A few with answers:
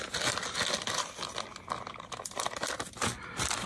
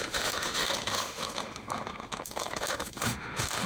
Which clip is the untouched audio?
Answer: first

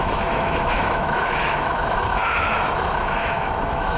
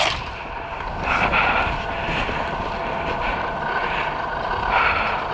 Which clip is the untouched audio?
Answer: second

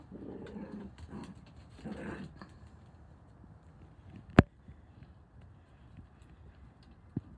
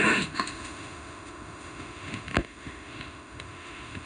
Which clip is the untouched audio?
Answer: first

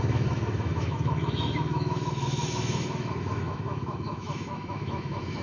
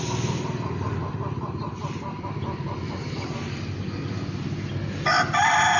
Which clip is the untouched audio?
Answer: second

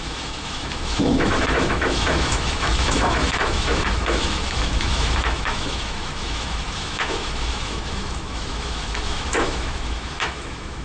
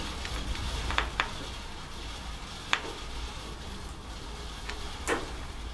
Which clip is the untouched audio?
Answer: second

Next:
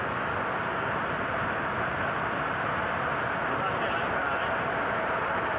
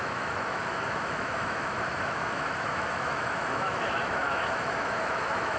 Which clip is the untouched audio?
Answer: first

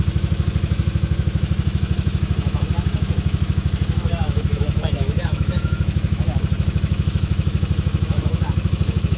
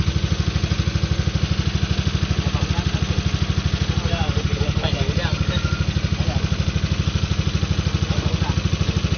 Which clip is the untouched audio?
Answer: second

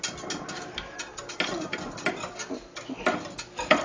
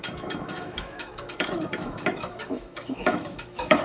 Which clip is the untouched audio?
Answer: first